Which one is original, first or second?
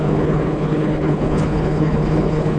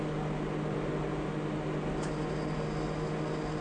second